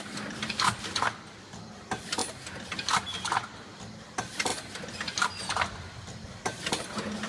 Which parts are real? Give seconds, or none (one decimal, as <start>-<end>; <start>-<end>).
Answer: 0.0-7.3